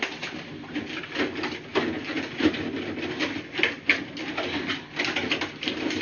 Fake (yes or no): no